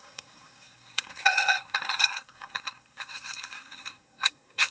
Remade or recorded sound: remade